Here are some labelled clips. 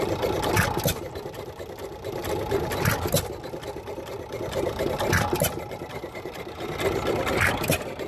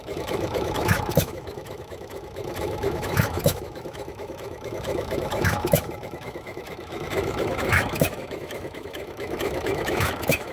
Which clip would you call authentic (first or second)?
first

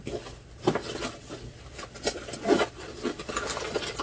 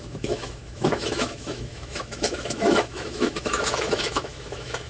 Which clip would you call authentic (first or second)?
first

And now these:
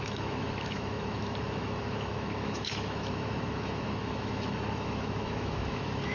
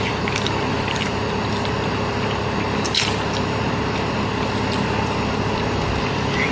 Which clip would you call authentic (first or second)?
second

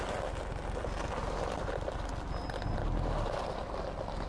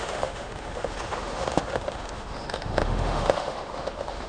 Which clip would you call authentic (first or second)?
first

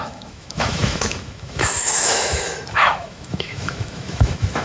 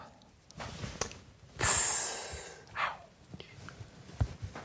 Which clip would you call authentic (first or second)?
second